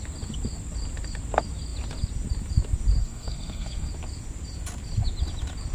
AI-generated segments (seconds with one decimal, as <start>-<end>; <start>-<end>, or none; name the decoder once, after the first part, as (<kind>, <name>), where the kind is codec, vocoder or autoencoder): 3.0-3.9 (codec, SNAC)